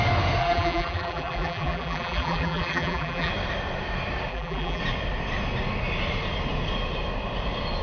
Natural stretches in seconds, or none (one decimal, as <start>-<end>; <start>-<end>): 0.0-0.4; 3.3-4.3; 4.8-7.8